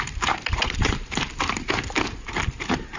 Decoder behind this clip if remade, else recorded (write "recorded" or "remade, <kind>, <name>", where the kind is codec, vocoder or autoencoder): recorded